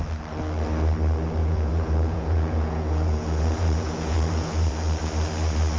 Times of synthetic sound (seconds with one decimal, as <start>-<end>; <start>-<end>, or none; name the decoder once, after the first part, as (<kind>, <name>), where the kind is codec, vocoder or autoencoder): 1.4-4.7 (vocoder, Vocos)